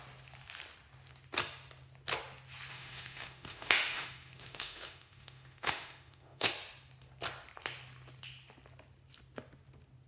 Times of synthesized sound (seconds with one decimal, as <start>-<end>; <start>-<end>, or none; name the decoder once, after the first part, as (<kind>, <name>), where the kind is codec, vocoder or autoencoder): 2.7-6.5 (autoencoder, DAC-VAE)